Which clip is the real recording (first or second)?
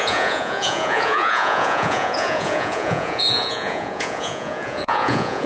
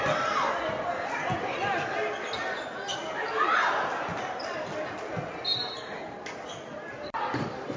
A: second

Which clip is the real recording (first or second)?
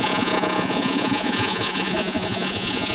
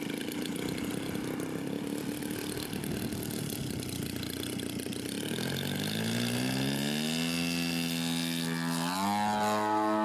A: second